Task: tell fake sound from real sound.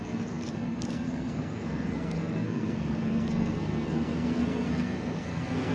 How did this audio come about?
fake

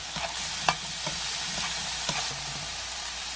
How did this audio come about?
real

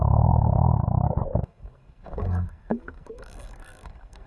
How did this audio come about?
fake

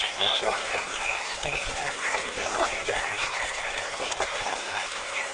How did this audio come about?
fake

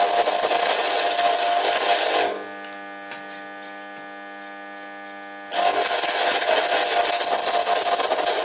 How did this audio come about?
real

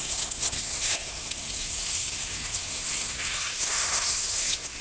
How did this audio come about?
fake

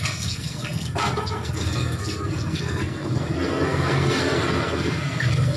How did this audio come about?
fake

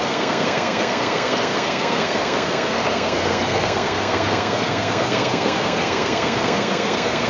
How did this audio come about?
fake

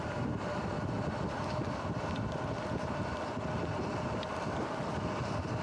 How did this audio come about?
real